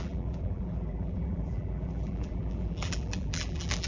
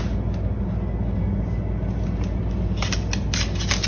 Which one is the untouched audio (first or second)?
second